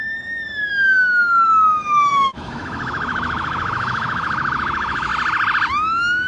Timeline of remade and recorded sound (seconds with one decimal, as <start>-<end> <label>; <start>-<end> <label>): 0.0-5.1 remade; 5.1-6.3 recorded